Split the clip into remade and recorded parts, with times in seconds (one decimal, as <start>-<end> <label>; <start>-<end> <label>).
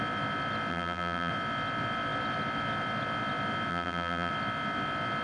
0.0-0.7 recorded; 0.7-1.3 remade; 1.3-3.7 recorded; 3.7-4.3 remade; 4.3-5.2 recorded